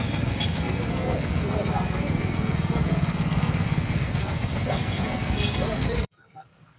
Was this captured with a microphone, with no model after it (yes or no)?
no